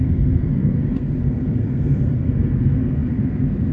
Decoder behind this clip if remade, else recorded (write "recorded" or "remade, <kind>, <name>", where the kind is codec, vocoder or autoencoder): remade, codec, SNAC